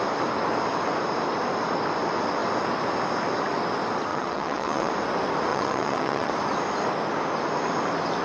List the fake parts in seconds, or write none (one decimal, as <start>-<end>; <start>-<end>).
4.1-4.9; 5.5-6.3